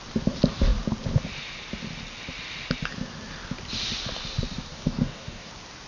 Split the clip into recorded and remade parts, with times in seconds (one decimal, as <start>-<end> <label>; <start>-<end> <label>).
0.0-4.7 recorded; 4.7-5.5 remade; 5.5-5.9 recorded